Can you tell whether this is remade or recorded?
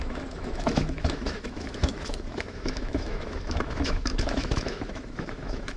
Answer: remade